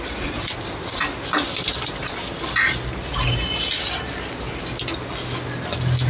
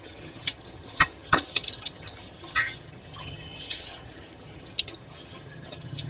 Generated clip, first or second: second